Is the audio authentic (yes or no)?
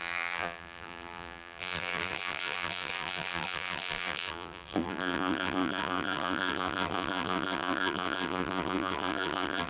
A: no